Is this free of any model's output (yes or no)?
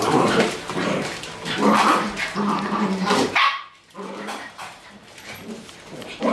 no